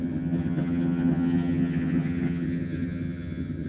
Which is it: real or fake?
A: fake